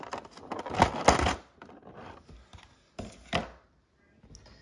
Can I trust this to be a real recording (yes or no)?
yes